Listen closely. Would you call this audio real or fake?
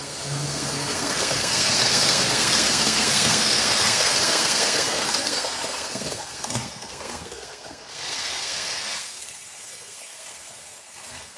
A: fake